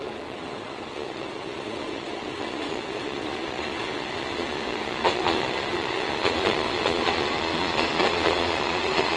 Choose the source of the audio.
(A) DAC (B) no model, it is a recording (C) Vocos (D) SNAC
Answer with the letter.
C